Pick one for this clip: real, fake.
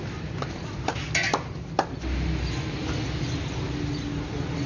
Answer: real